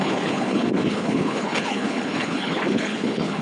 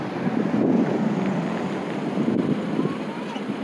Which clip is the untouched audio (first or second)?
second